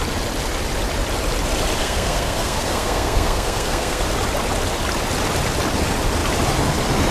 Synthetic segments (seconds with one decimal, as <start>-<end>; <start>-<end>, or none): 1.8-4.0